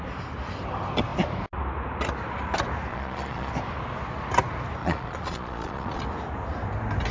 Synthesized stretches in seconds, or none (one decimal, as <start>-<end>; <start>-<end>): 2.9-3.5; 4.8-6.0